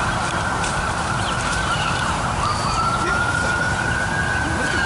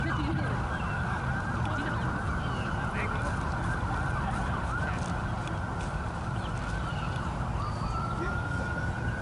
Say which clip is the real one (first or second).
second